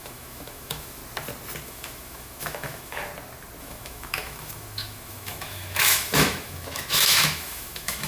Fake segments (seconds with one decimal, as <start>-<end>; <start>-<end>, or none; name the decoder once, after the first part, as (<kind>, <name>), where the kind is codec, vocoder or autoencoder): 0.0-1.0 (autoencoder, DAC-VAE); 1.6-3.1; 3.6-8.1